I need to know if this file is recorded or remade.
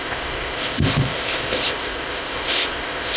remade